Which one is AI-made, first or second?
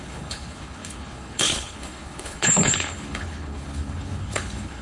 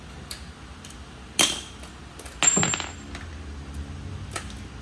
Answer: first